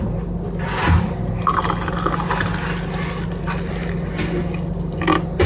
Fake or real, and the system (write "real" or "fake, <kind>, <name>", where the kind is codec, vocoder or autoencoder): real